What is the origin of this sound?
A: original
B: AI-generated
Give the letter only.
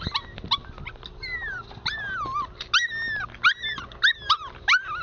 A